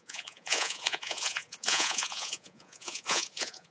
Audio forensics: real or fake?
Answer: fake